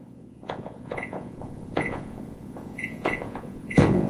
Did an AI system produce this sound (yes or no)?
yes